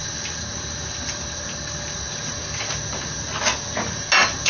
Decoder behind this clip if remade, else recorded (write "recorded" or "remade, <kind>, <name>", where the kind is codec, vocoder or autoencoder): recorded